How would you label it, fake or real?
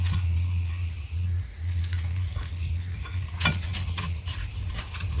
fake